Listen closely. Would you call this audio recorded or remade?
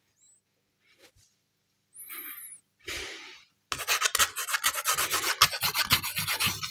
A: recorded